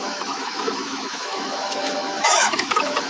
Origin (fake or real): fake